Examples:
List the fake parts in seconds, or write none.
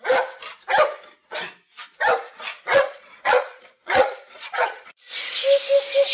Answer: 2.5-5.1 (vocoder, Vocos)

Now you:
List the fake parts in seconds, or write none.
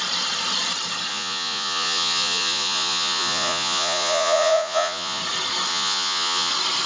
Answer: 1.1-5.2 (vocoder, Vocos); 5.7-6.5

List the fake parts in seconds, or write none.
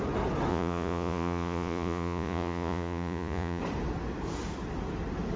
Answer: 0.5-3.6 (vocoder, Vocos)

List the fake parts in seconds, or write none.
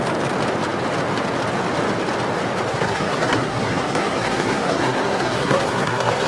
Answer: 2.7-6.3 (codec, SNAC)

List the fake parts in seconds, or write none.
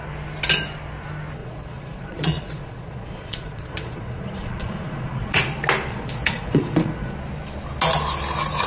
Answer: 1.4-5.4 (vocoder, Vocos); 5.9-7.1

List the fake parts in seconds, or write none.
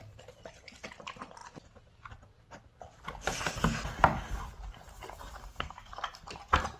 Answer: 5.4-5.9 (codec, SNAC)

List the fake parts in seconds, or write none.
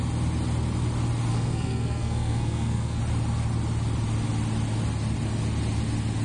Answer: 1.3-3.0 (codec, SNAC)